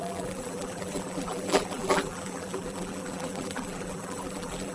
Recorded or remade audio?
remade